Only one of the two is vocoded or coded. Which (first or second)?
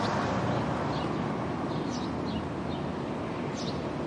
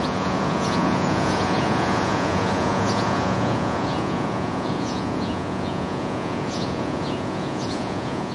second